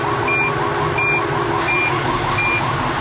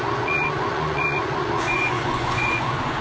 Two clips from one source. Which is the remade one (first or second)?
second